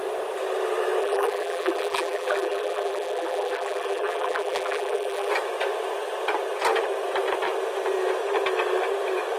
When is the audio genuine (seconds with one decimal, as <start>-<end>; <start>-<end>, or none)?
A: 0.0-1.0; 5.3-9.4